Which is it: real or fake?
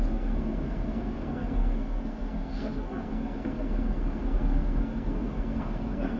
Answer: fake